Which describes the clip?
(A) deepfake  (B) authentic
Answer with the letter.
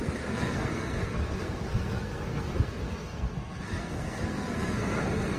A